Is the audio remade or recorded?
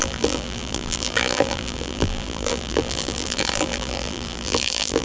remade